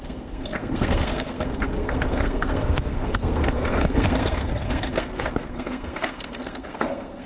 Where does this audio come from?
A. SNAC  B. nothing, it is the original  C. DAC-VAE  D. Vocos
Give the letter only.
A